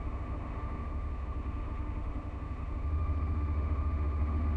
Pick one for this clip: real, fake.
fake